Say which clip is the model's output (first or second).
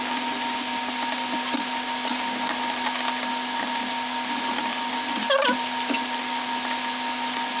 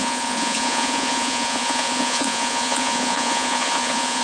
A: second